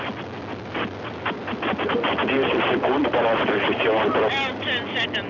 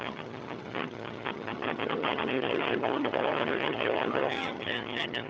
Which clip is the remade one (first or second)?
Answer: second